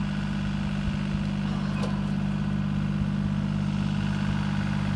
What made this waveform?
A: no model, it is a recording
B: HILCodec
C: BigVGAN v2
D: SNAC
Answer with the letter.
A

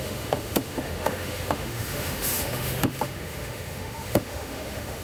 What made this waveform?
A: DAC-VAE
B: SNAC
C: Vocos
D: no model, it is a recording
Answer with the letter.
A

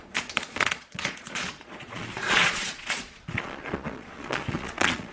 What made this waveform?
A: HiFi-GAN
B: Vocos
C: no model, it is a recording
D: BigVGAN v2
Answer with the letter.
B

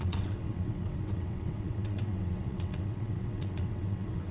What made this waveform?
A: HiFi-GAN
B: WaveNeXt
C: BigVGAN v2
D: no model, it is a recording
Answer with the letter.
B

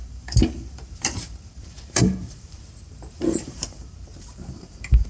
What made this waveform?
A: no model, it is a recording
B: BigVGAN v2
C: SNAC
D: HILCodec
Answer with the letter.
B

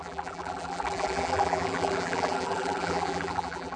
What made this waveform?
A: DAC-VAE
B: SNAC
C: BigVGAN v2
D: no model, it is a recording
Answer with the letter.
C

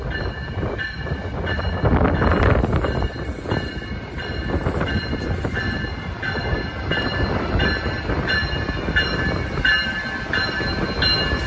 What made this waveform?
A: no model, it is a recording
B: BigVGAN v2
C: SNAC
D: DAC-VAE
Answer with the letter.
A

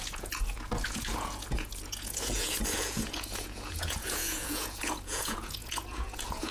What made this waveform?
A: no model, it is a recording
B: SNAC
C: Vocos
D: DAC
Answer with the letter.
C